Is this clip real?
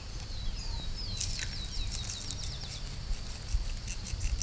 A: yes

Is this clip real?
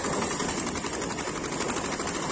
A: yes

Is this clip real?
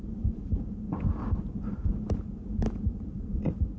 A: no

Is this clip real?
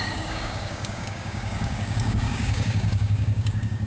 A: no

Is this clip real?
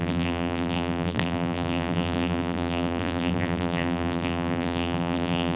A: no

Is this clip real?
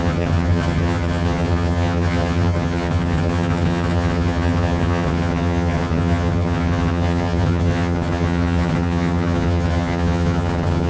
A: no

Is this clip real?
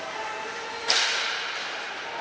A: yes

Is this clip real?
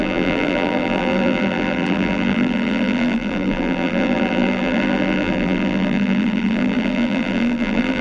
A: no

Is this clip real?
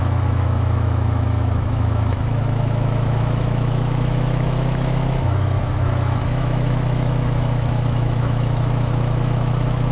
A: no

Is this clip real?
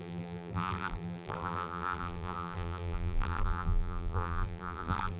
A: no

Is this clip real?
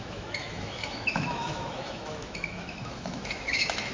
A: no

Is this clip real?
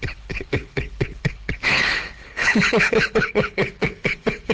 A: no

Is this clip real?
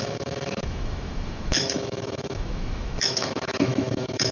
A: no